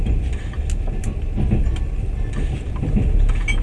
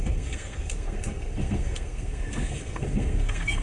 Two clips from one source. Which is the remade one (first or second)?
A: second